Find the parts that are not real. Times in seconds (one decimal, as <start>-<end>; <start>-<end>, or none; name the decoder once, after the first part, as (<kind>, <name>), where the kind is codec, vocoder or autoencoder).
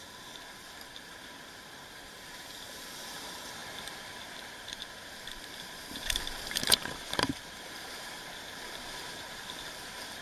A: 0.0-10.2 (vocoder, BigVGAN v2)